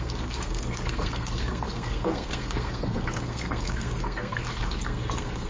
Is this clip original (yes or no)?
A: no